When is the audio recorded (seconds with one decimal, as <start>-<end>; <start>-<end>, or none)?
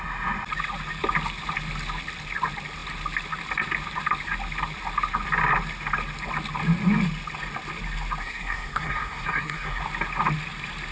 0.0-8.2; 9.8-10.9